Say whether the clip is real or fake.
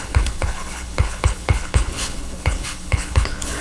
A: fake